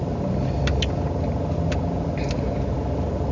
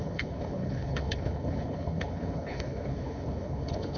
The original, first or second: first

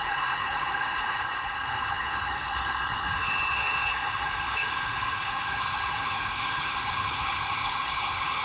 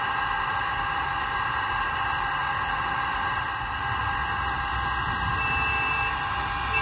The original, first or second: second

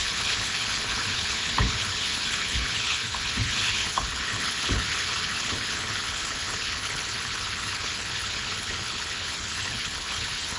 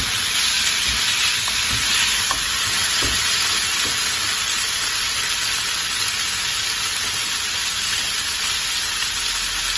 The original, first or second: second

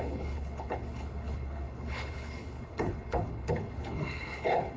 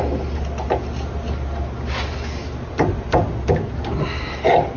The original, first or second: second